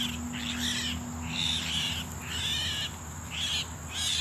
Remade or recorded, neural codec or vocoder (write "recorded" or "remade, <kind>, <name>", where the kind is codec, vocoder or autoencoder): recorded